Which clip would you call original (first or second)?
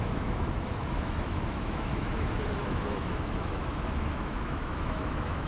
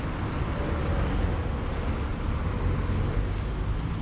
second